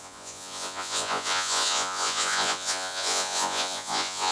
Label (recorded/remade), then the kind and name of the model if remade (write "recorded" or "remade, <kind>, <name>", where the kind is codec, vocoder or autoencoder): remade, vocoder, Vocos